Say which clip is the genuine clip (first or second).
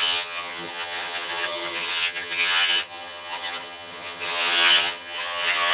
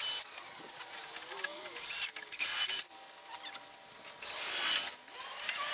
second